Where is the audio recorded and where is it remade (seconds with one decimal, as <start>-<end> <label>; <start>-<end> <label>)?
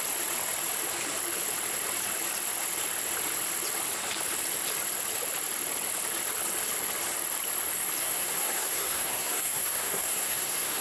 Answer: 0.0-8.0 recorded; 8.0-10.8 remade